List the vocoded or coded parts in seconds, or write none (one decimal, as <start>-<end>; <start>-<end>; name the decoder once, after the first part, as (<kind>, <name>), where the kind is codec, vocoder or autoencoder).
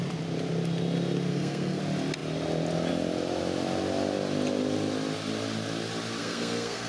1.3-1.8 (codec, SNAC); 6.2-6.9